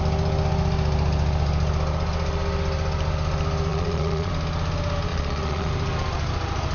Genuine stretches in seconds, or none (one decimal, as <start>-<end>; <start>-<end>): 0.0-3.7; 4.3-5.1; 5.7-6.7